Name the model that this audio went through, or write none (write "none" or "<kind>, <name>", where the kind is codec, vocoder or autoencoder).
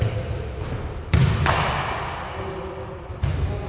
none